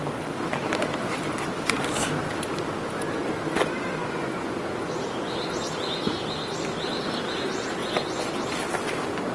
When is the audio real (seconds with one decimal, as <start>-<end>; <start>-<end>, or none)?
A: 0.0-4.0; 5.0-7.8; 8.3-9.3